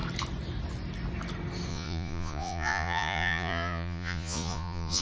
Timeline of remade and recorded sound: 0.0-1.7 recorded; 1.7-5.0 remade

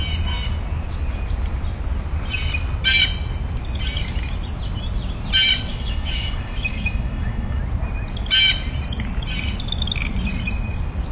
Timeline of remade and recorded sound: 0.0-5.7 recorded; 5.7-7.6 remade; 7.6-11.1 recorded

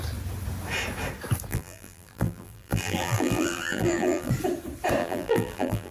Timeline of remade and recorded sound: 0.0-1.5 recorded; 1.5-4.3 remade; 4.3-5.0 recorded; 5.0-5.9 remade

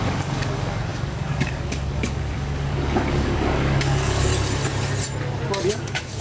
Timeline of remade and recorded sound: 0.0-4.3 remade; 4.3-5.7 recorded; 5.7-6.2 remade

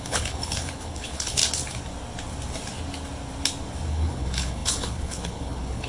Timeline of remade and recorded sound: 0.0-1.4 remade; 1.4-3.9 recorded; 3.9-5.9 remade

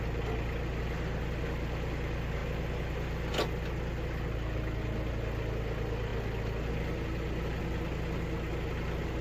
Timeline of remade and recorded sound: 0.0-9.2 recorded

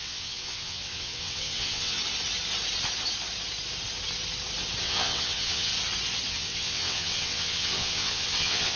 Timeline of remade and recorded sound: 0.0-2.0 remade; 2.0-4.8 recorded; 4.8-5.7 remade; 5.7-6.3 recorded; 6.3-8.8 remade

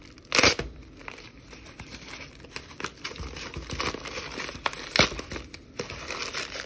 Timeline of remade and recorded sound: 0.0-6.7 recorded